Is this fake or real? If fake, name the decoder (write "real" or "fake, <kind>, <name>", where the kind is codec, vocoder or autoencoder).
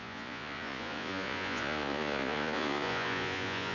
fake, vocoder, Vocos